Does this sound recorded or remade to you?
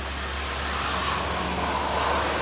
recorded